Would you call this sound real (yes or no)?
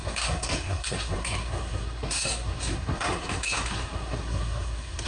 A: no